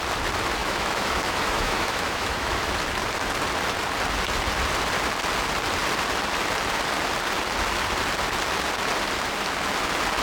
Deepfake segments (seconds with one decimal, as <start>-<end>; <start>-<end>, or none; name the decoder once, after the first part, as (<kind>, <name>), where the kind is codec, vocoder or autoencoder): 0.6-2.7 (autoencoder, DAC-VAE)